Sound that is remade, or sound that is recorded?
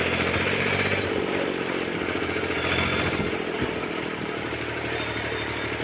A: remade